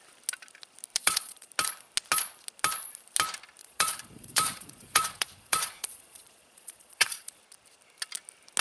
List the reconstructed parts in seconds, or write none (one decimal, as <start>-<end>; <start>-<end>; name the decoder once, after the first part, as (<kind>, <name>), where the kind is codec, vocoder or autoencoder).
1.0-1.5 (vocoder, Vocos); 3.6-7.4